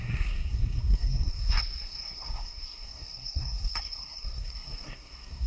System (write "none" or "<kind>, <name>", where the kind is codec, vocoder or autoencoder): codec, SNAC